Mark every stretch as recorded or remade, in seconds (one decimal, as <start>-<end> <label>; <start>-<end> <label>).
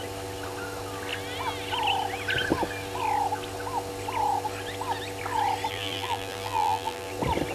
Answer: 0.0-5.7 recorded; 5.7-7.1 remade; 7.1-7.5 recorded